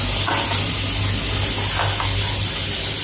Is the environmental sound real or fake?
real